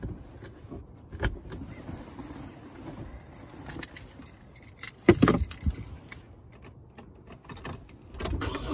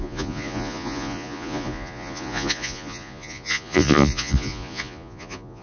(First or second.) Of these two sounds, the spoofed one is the second